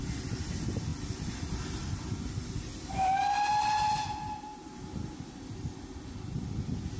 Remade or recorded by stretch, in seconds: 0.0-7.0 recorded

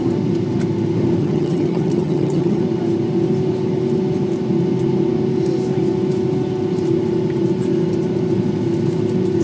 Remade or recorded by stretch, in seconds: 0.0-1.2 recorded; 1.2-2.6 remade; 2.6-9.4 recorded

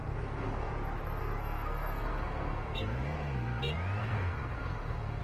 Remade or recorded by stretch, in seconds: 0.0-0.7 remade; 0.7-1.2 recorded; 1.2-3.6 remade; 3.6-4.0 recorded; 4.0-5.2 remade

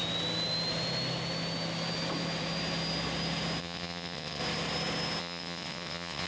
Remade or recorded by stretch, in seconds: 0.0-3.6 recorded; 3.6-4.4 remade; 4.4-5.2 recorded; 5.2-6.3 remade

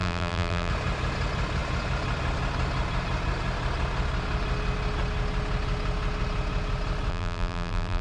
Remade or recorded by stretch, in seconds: 0.0-0.7 remade; 0.7-7.1 recorded; 7.1-8.0 remade